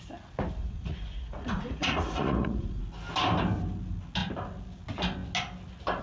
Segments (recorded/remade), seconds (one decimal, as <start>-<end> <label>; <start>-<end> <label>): 0.0-0.6 recorded; 0.6-2.8 remade; 2.8-6.0 recorded